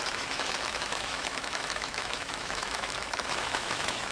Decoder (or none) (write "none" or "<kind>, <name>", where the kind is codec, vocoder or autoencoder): autoencoder, DAC-VAE